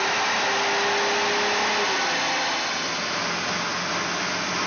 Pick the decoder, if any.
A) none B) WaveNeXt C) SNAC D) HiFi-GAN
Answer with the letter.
A